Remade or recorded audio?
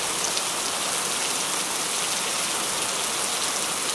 recorded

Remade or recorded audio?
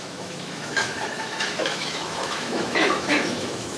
remade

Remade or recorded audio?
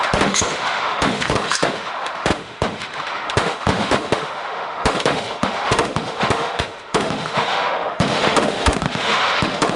remade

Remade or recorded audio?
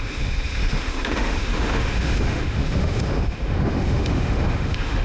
remade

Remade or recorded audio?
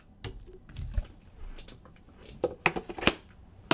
recorded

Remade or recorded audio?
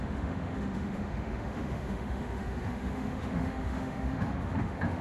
remade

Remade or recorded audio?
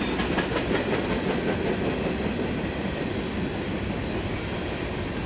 recorded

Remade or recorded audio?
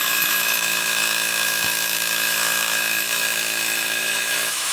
remade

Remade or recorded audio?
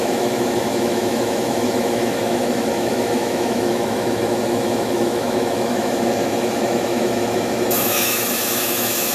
remade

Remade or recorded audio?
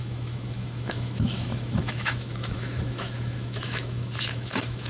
remade